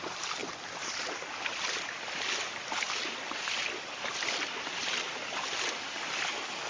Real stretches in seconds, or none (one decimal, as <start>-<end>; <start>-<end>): 0.0-6.7